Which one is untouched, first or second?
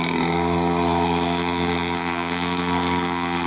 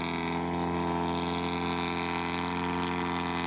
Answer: second